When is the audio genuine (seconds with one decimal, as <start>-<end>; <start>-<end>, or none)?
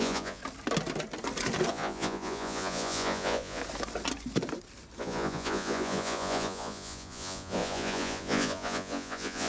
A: 0.4-1.7; 3.6-5.0